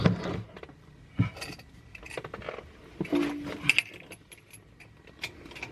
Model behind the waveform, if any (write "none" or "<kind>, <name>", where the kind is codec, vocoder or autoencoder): none